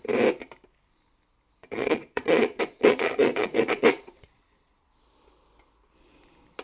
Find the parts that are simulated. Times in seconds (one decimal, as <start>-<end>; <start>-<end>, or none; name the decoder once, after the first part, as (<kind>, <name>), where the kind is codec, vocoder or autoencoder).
1.6-4.9 (vocoder, Vocos)